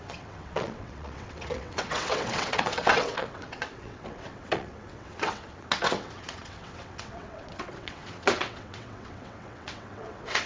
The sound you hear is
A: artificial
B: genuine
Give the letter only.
A